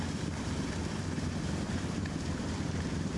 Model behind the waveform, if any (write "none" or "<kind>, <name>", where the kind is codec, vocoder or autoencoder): vocoder, BigVGAN v2